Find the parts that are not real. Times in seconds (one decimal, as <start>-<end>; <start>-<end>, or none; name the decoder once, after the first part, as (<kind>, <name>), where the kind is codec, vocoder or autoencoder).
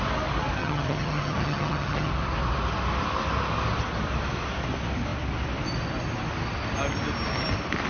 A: 0.6-2.1 (vocoder, HiFi-GAN)